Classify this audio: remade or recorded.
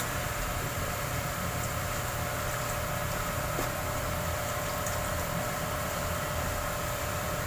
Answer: remade